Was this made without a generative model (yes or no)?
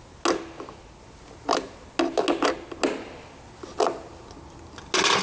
yes